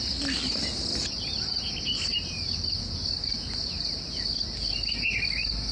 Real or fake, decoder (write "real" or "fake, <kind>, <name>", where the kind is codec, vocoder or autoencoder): real